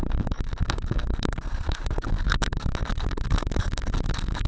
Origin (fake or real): fake